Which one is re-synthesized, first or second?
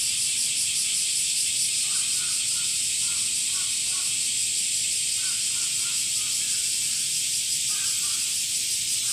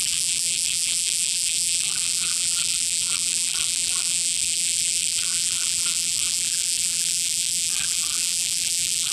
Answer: second